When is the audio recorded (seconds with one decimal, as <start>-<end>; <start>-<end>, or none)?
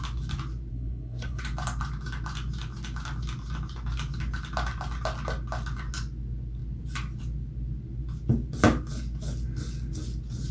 0.0-0.7; 1.4-10.5